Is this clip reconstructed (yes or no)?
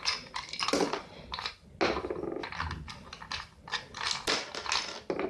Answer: no